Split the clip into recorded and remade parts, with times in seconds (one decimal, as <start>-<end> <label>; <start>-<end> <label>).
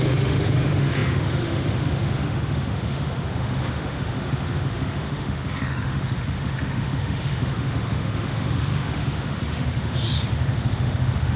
0.0-11.4 remade